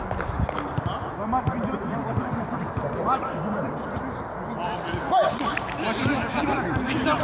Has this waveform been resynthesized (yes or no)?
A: no